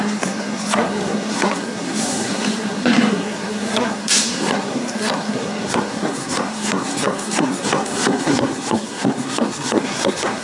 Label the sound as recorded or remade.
remade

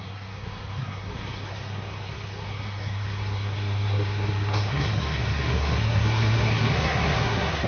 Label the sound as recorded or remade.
remade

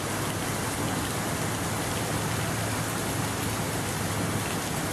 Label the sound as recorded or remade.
recorded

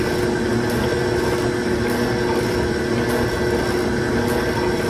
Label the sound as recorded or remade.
recorded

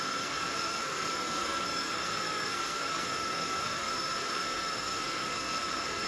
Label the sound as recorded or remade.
remade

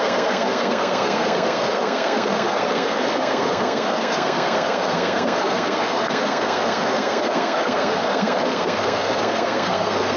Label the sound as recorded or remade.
remade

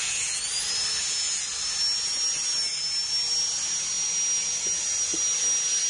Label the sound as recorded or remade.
recorded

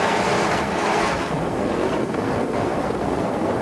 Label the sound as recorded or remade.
remade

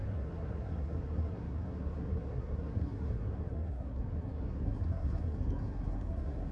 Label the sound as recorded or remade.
remade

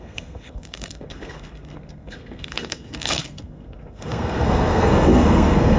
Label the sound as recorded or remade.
remade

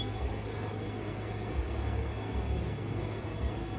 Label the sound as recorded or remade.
remade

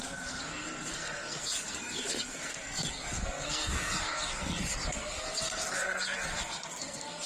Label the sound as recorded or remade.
remade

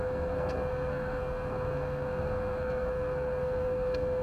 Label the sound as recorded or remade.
remade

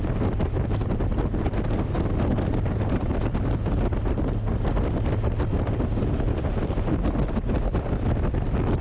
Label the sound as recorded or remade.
recorded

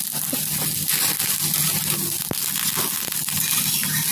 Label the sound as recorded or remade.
recorded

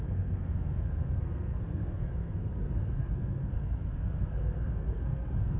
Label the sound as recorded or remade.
remade